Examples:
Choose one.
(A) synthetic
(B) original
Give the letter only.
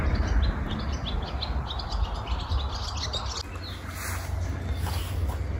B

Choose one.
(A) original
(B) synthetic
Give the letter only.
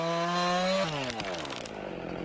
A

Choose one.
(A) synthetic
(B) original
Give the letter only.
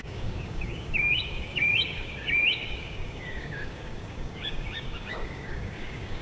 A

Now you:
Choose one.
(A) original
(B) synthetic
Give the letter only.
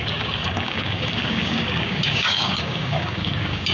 B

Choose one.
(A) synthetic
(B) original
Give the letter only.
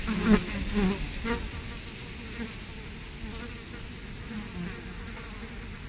B